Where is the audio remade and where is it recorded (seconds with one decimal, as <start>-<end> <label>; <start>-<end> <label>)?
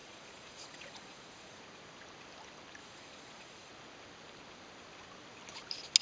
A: 0.0-1.6 remade; 1.6-2.8 recorded; 2.8-3.7 remade; 3.7-6.0 recorded